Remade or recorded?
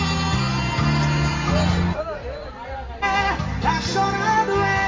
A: recorded